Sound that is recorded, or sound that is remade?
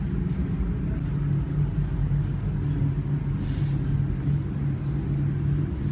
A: recorded